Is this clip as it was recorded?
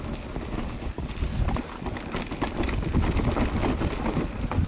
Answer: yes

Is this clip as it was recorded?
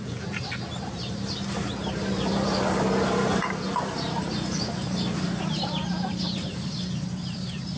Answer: no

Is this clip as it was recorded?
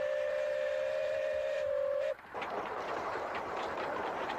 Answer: no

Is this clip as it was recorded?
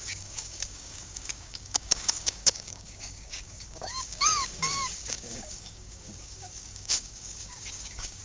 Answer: no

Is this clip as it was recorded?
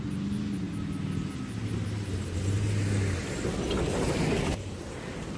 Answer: yes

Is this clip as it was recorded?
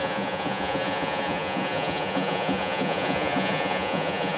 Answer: no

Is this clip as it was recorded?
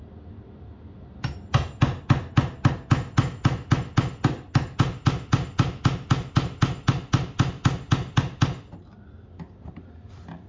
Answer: yes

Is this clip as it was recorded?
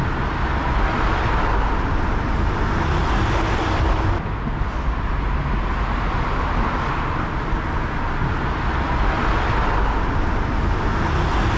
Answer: yes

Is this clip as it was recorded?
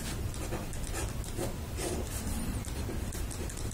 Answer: yes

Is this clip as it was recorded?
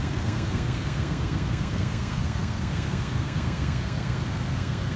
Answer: no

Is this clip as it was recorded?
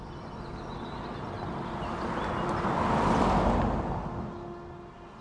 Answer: yes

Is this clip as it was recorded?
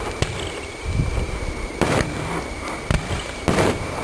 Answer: yes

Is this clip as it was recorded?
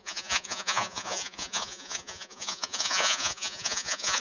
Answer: no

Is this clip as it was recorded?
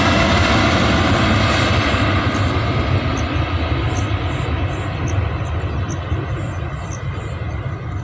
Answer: yes